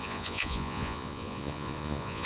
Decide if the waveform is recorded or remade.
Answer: remade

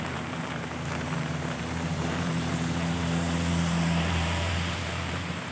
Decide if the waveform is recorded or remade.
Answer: remade